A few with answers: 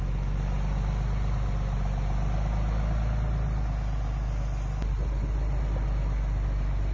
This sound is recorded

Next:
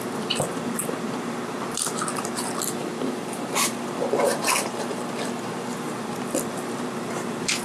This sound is remade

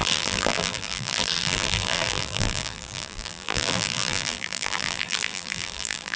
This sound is remade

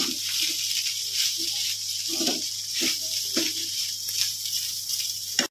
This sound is remade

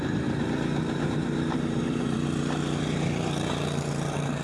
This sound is remade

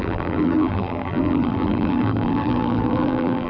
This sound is remade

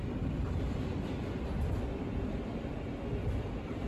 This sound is recorded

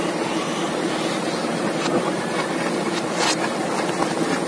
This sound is recorded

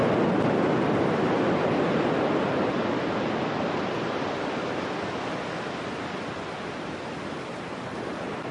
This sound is recorded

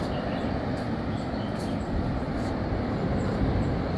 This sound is recorded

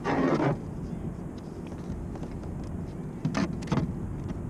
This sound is recorded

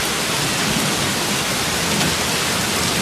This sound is recorded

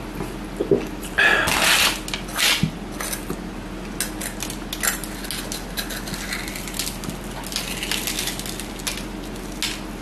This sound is recorded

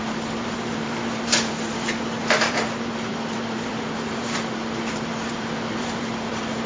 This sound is remade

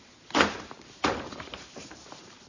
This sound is remade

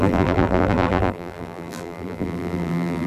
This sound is remade